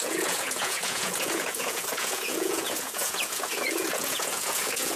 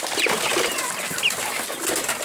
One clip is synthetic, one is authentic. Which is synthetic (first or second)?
first